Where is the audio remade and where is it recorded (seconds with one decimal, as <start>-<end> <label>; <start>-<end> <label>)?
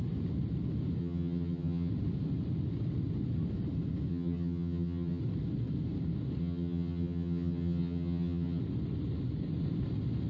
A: 0.0-1.0 recorded; 1.0-1.9 remade; 1.9-4.1 recorded; 4.1-5.2 remade; 5.2-6.4 recorded; 6.4-8.6 remade; 8.6-10.3 recorded